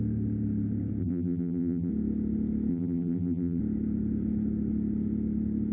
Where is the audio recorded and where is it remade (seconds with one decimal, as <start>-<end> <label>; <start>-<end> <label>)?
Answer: 0.0-1.0 recorded; 1.0-1.9 remade; 1.9-2.7 recorded; 2.7-3.6 remade; 3.6-5.7 recorded